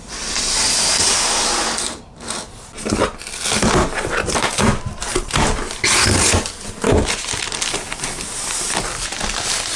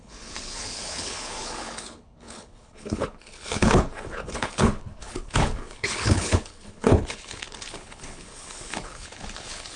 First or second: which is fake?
second